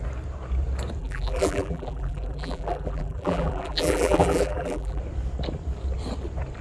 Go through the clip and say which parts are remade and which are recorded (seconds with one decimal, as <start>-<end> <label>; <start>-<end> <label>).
0.0-1.0 recorded; 1.0-5.0 remade; 5.0-6.6 recorded